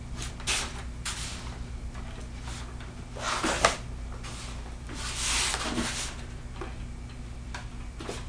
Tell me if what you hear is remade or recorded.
recorded